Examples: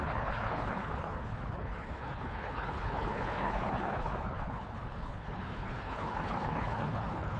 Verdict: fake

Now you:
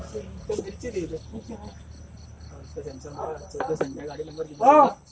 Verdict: real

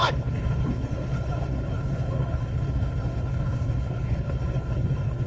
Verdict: fake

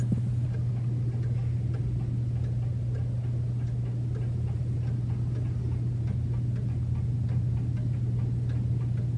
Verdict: real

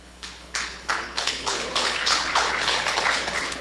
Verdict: fake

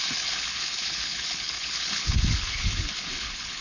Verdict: fake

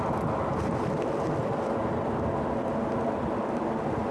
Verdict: real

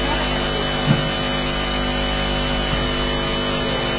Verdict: real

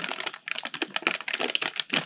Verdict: real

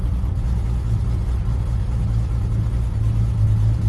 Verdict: real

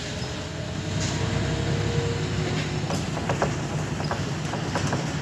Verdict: real